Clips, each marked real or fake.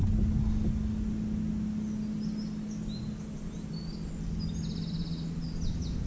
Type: real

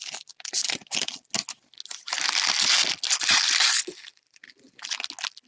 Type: real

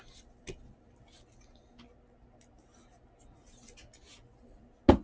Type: real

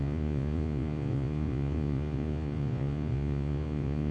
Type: fake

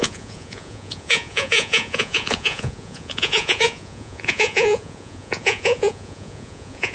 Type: fake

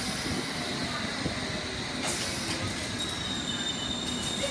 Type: real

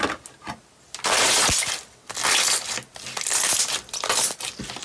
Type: real